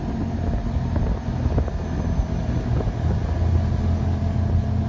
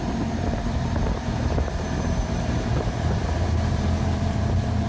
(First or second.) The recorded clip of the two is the first